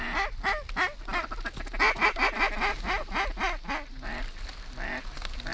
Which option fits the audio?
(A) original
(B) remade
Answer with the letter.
A